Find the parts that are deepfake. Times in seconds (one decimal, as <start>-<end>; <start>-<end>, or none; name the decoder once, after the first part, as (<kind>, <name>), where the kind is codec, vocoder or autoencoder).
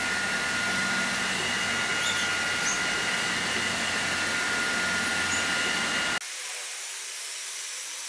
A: none